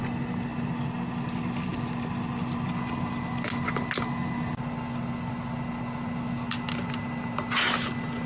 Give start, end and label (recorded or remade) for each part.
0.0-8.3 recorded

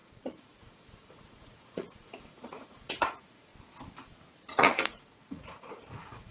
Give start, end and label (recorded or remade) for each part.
0.0-3.5 remade; 3.5-4.4 recorded; 4.4-6.3 remade

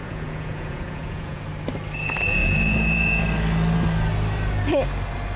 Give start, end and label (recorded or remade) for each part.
0.0-1.4 remade; 1.4-2.4 recorded; 2.4-3.2 remade; 3.2-5.4 recorded

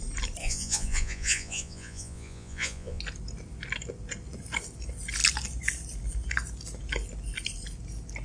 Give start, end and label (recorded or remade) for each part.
0.0-0.4 recorded; 0.4-3.0 remade; 3.0-8.2 recorded

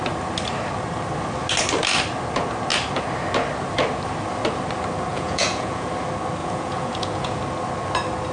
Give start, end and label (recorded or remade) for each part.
0.0-5.1 recorded; 5.1-5.9 remade; 5.9-6.4 recorded; 6.4-7.4 remade; 7.4-8.3 recorded

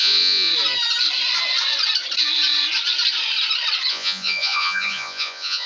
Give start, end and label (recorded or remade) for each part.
0.0-0.5 remade; 0.5-3.9 recorded; 3.9-5.7 remade